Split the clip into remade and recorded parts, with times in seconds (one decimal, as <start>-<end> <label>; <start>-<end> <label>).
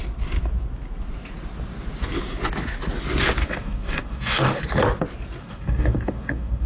0.0-3.4 recorded; 3.4-4.6 remade; 4.6-5.4 recorded; 5.4-6.7 remade